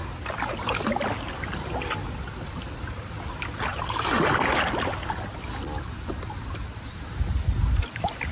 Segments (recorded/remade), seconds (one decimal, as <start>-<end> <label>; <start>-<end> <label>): 0.0-8.3 recorded